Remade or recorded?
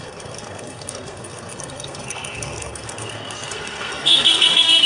remade